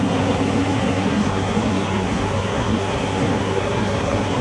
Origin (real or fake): fake